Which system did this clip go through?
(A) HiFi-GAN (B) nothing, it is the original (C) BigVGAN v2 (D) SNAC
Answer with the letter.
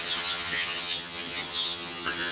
A